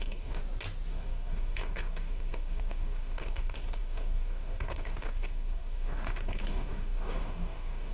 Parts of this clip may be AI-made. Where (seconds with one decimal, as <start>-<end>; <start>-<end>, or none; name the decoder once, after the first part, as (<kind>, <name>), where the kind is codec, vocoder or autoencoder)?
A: 0.0-0.4 (codec, DAC); 0.9-7.9